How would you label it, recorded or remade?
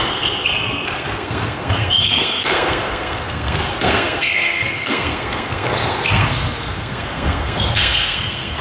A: remade